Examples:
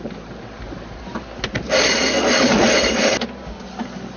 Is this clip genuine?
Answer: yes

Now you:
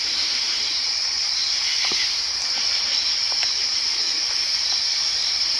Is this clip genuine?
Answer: no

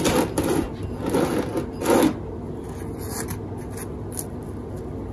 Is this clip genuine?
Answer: yes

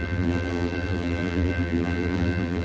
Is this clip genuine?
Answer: no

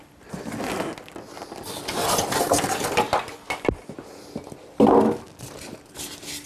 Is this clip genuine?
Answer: yes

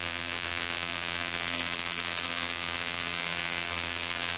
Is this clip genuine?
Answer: no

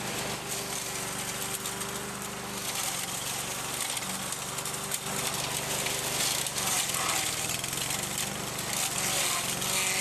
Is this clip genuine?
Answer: yes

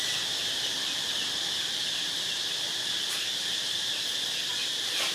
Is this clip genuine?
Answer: no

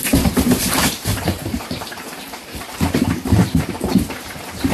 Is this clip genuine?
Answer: no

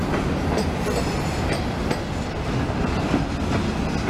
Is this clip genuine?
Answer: yes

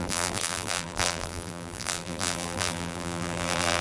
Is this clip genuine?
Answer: no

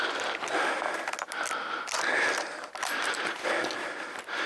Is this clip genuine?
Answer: yes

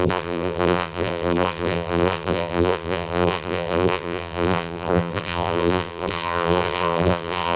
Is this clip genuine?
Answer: no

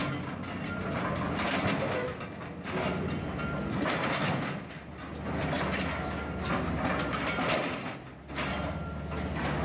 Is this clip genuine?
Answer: yes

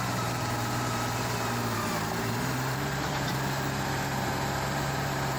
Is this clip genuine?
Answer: no